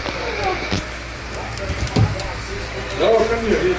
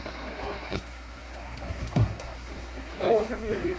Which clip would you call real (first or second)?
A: first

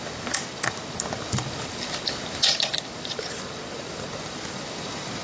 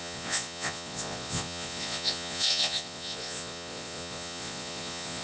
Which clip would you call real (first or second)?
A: first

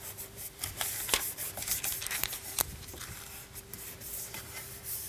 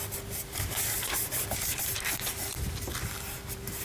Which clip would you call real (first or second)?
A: second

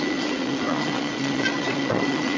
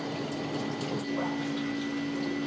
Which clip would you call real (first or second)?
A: second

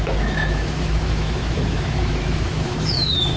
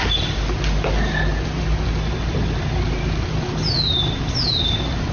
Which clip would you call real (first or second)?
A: second